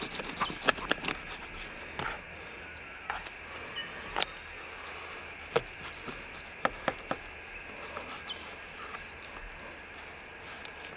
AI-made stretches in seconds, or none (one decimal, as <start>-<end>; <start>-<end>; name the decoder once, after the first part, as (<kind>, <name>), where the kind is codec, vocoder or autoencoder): none